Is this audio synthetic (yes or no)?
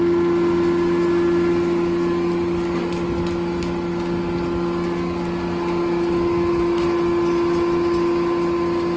no